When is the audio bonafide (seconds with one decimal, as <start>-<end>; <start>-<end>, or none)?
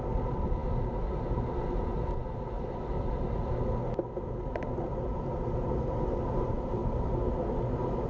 0.0-8.1